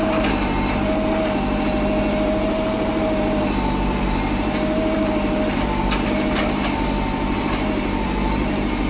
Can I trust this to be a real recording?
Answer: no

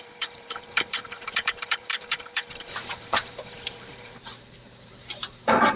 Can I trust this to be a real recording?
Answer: no